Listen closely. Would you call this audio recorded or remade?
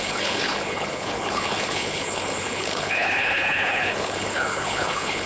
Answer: remade